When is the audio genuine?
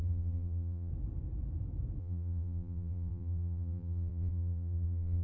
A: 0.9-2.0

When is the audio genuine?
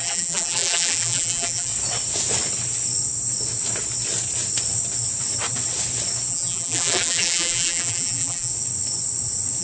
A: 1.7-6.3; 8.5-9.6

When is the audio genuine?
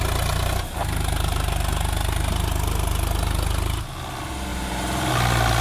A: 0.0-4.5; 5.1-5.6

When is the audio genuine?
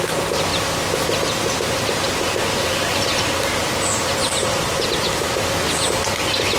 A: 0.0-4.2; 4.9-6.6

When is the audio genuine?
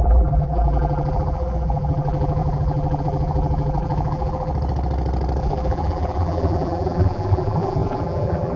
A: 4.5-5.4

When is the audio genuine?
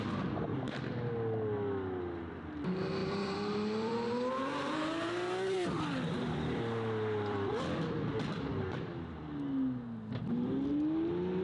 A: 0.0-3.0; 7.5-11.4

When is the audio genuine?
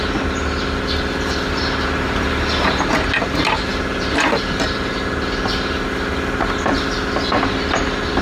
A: 0.0-3.7; 4.9-8.2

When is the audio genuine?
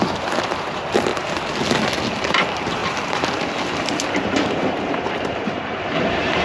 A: 1.1-2.1